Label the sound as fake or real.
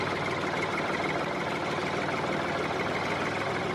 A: real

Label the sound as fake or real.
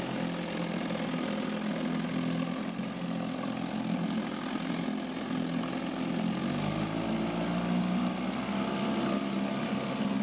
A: real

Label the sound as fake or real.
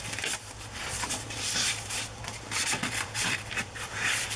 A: fake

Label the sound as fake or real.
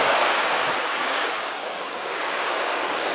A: fake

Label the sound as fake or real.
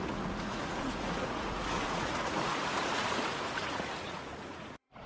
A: fake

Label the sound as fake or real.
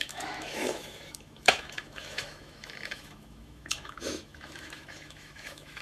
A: fake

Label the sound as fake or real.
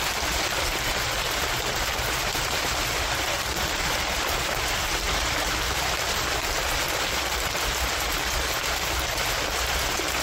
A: real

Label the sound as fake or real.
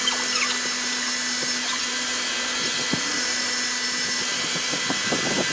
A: real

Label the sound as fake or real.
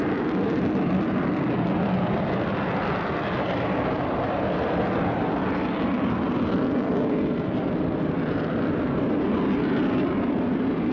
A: real